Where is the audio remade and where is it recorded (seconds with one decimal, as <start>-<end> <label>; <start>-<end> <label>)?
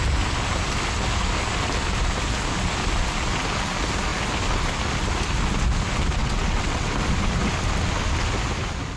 0.0-6.2 recorded; 6.2-6.9 remade; 6.9-9.0 recorded